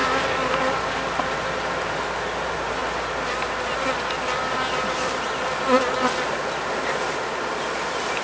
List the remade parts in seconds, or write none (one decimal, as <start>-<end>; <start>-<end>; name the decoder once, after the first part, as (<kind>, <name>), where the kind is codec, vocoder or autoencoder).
none